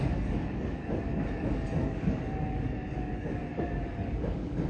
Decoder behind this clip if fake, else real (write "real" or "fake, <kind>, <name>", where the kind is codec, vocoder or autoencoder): fake, codec, DAC